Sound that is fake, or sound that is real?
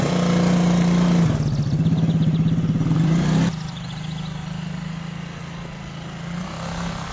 real